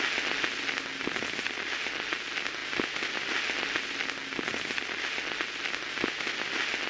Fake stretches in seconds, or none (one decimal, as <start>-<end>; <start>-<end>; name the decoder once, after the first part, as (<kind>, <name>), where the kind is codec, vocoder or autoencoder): none